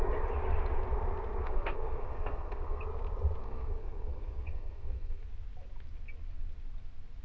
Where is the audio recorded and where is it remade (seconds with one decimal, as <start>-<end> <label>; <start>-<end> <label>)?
0.0-1.4 recorded; 1.4-2.8 remade; 2.8-3.4 recorded; 3.4-5.2 remade; 5.2-7.2 recorded